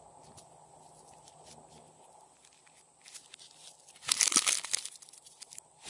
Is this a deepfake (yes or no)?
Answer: no